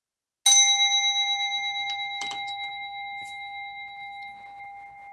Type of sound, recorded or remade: recorded